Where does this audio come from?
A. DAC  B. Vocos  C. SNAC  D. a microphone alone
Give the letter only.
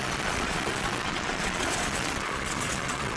B